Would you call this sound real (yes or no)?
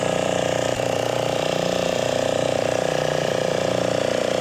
no